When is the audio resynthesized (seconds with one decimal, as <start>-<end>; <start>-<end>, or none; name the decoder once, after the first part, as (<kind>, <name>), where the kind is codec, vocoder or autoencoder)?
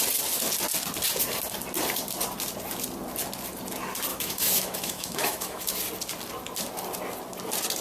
4.1-5.7 (autoencoder, DAC-VAE)